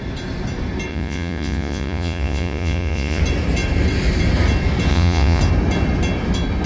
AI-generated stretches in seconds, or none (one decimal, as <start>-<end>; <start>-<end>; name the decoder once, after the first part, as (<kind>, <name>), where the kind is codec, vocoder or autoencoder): 0.9-3.2 (vocoder, Vocos); 4.9-5.4